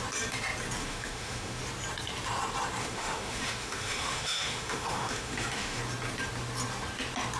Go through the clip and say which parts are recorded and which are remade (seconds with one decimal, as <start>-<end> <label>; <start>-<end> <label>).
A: 0.0-0.8 recorded; 0.8-1.6 remade; 1.6-2.8 recorded; 2.8-5.8 remade; 5.8-7.4 recorded